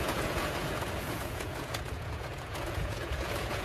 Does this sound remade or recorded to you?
remade